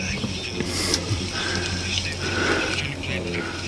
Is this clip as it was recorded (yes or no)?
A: yes